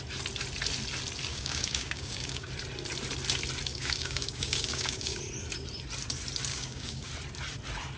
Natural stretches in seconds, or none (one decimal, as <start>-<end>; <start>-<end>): 0.0-1.3; 2.5-3.7; 5.2-6.5; 7.1-8.0